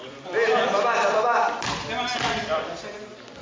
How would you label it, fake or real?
fake